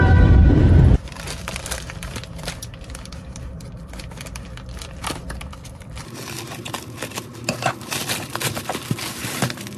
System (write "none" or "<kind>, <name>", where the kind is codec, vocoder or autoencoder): vocoder, BigVGAN v2